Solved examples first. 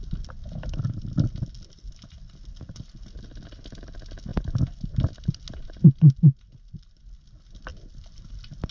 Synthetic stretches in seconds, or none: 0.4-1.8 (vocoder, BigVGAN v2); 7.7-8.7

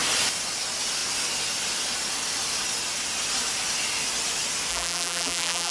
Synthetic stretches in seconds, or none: 4.7-5.7 (vocoder, BigVGAN v2)

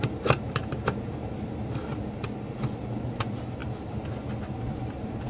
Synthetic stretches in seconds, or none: 0.0-1.9 (vocoder, BigVGAN v2); 2.8-5.3

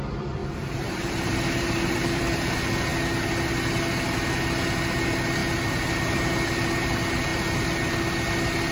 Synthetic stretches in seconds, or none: 0.4-2.2 (vocoder, BigVGAN v2)

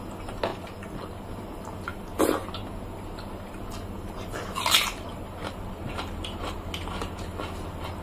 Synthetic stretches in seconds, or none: none

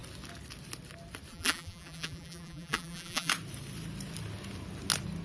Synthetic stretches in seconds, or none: 1.3-3.3 (vocoder, BigVGAN v2)